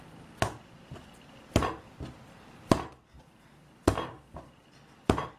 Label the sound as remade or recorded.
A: remade